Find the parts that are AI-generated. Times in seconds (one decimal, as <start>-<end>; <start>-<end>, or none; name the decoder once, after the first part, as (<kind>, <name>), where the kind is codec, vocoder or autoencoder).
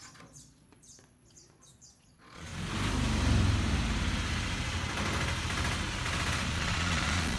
0.0-2.5 (vocoder, Vocos); 6.5-7.4